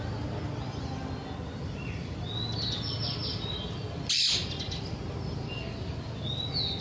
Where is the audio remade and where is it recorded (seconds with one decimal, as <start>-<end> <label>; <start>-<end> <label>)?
0.0-6.8 recorded